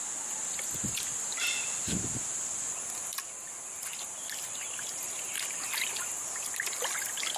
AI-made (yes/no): no